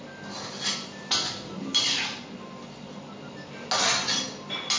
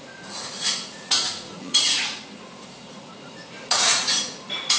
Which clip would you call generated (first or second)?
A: second